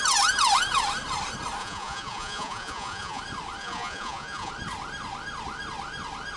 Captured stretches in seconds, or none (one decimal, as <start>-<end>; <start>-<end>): 0.0-1.6; 3.2-3.6; 4.5-6.4